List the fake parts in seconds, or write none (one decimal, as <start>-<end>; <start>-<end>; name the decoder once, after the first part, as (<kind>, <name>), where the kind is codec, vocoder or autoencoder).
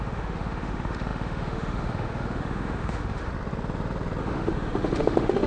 0.0-3.3 (autoencoder, DAC-VAE); 4.2-5.5